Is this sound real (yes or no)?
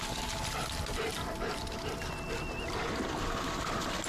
yes